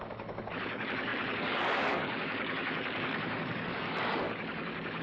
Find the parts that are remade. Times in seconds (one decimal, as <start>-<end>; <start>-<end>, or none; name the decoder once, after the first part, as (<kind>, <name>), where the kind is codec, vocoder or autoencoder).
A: 0.0-5.0 (codec, DAC)